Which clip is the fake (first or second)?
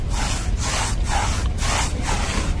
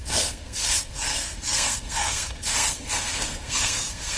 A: second